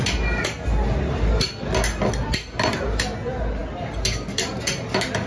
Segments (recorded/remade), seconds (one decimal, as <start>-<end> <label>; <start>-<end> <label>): 0.0-5.3 recorded